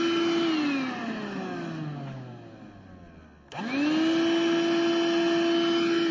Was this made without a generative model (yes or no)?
yes